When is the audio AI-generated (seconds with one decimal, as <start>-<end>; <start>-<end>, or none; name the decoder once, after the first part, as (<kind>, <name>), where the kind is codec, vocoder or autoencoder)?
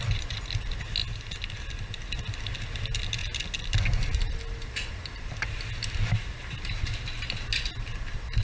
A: none